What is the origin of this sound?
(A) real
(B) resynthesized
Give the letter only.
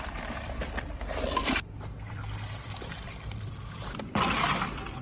B